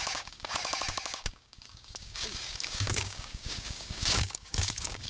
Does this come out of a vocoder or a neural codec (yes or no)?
yes